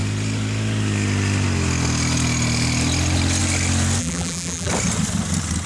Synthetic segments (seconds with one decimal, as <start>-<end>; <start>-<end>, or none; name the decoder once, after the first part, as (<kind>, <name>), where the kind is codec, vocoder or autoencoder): 4.0-4.7 (vocoder, BigVGAN v2)